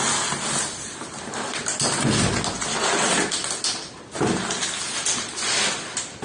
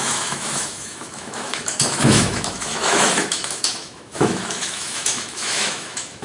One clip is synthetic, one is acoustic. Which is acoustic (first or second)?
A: first